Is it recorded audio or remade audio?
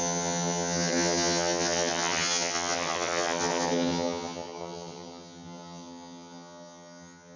remade